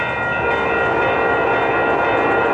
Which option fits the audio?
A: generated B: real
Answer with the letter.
B